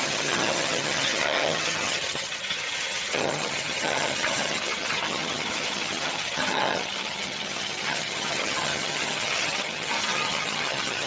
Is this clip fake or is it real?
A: fake